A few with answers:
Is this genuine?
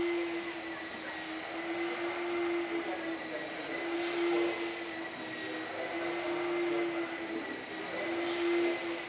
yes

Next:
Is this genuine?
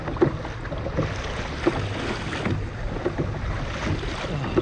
yes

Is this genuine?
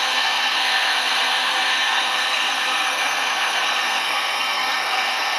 no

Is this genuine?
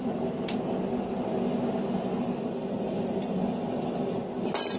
yes